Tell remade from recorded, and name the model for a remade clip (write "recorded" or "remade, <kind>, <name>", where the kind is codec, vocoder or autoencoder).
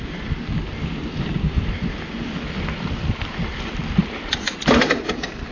recorded